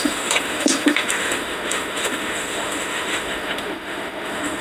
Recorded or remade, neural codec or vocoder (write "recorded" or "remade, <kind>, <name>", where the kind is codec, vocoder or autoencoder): remade, autoencoder, DAC-VAE